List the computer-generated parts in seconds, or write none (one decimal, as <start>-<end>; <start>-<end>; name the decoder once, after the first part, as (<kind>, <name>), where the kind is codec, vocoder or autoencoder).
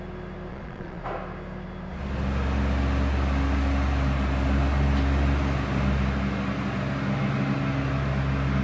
0.5-1.0 (vocoder, Vocos)